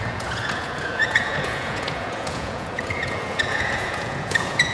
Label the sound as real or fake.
fake